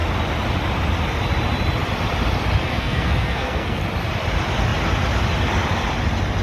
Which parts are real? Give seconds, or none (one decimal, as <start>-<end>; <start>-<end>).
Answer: 0.0-2.7; 3.8-6.4